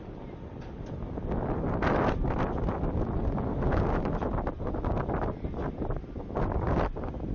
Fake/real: real